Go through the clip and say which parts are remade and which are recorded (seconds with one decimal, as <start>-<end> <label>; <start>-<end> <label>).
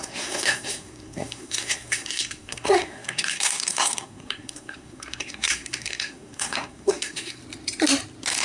0.0-7.4 remade; 7.4-8.4 recorded